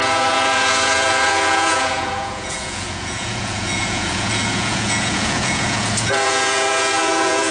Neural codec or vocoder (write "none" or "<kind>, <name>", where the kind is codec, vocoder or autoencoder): vocoder, Vocos